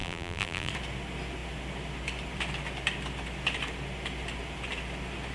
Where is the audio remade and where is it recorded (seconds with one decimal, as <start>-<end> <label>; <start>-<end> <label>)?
0.0-0.7 remade; 0.7-5.3 recorded